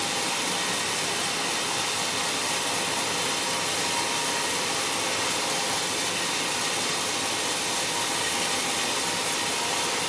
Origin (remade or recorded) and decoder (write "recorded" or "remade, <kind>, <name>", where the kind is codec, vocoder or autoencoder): recorded